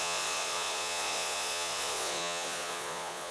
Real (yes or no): no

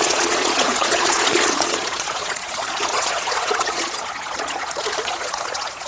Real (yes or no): no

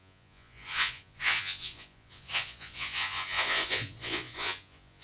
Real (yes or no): no